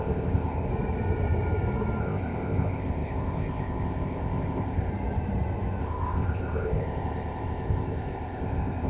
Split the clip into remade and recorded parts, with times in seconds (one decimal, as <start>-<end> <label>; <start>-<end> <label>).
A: 0.0-0.7 remade; 0.7-2.0 recorded; 2.0-4.9 remade; 4.9-5.8 recorded; 5.8-8.9 remade